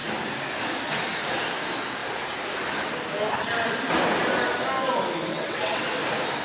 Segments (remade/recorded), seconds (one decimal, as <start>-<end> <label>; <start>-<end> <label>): 0.0-5.3 recorded; 5.3-5.9 remade; 5.9-6.4 recorded